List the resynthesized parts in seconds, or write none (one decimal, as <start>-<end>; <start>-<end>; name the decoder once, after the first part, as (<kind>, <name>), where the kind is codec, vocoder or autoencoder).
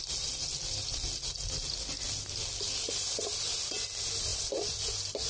none